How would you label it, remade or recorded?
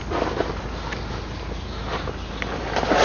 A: recorded